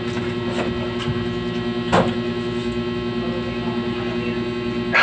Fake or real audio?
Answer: real